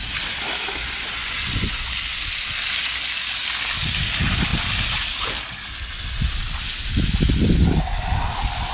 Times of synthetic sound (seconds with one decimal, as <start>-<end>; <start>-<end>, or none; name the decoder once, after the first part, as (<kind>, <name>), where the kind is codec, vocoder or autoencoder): 1.2-1.9 (vocoder, Vocos)